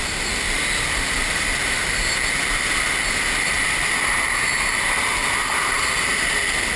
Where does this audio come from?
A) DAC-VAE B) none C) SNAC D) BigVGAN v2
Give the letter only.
B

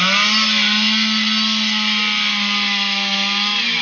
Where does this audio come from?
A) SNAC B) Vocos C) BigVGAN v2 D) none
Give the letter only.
D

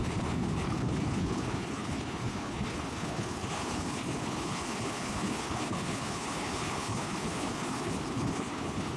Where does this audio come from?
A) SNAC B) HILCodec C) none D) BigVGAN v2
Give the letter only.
B